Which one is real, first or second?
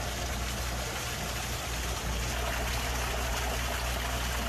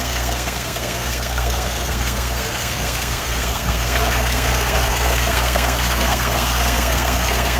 first